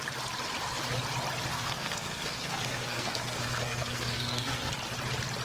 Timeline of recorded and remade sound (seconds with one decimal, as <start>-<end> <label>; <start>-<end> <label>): 0.0-1.5 recorded; 1.5-4.7 remade; 4.7-5.4 recorded